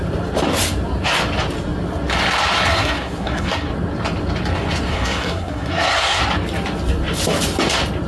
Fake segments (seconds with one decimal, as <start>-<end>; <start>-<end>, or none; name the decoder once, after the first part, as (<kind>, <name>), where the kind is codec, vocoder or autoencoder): 2.7-3.7 (codec, SNAC); 4.9-6.2